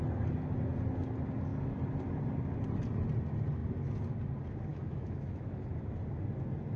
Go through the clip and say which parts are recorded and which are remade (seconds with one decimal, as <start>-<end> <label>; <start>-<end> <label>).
0.0-4.7 recorded; 4.7-5.7 remade; 5.7-6.8 recorded